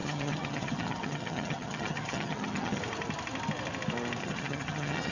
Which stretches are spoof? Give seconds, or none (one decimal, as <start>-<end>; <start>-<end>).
0.0-2.8; 4.2-5.1